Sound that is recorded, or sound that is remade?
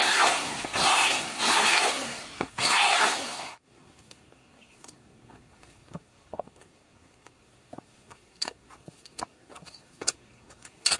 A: remade